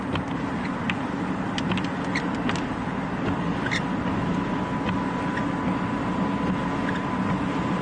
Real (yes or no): yes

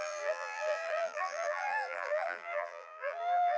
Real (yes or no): no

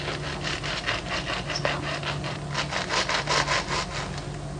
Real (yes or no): yes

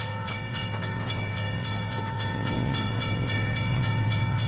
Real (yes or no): no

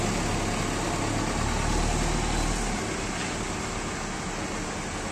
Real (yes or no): yes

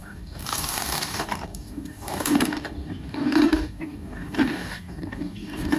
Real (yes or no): no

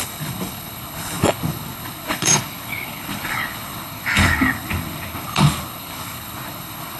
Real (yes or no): no